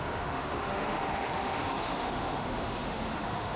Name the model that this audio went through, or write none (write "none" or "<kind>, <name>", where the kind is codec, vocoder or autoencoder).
autoencoder, DAC-VAE